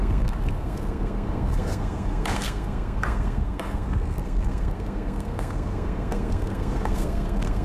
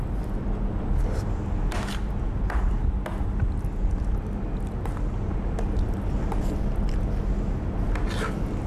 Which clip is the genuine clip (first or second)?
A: second